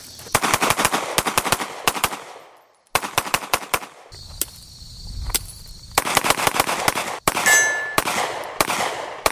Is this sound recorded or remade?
recorded